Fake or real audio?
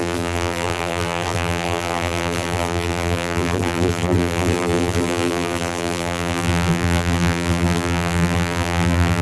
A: fake